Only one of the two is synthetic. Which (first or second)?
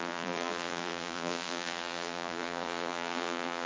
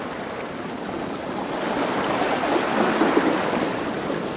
first